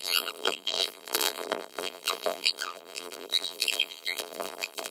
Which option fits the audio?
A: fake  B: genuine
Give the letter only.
A